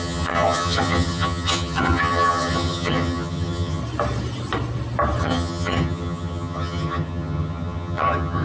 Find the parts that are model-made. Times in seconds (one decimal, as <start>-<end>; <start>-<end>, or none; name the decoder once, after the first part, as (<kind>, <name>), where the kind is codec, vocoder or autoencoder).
0.0-3.8 (vocoder, HiFi-GAN); 5.2-8.4